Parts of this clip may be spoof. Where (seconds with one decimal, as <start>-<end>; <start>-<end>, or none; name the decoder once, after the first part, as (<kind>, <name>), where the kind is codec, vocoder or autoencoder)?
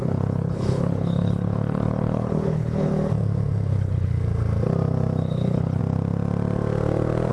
0.0-2.9 (codec, HILCodec); 3.7-4.2; 5.2-5.8